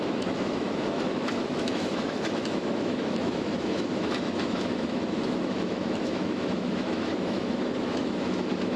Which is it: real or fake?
fake